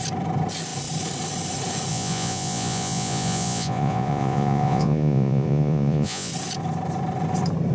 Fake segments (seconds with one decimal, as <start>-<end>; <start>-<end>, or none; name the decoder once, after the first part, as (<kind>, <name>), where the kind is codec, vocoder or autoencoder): 1.9-6.3 (vocoder, Vocos)